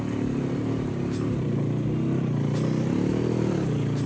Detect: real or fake real